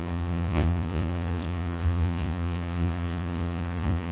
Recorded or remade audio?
remade